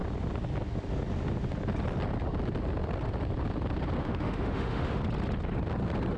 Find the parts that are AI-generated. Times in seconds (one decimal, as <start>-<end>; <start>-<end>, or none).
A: 4.0-5.0